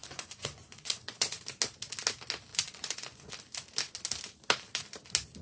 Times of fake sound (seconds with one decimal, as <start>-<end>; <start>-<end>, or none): 0.0-1.4; 2.5-3.3